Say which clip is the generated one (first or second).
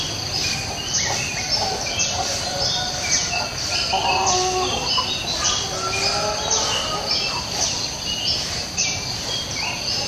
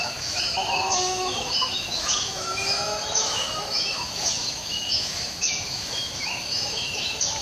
second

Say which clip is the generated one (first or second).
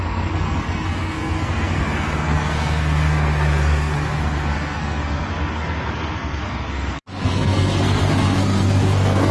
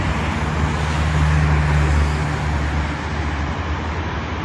first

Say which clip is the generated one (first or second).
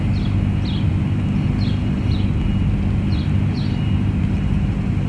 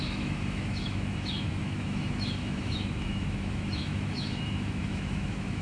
second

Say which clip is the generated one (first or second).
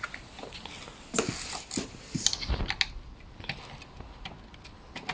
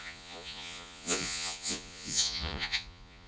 second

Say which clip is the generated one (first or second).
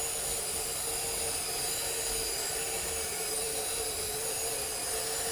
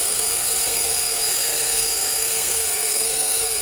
second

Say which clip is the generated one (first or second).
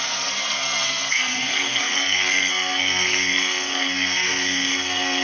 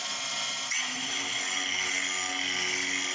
first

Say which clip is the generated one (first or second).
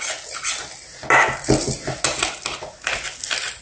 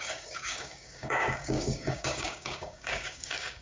second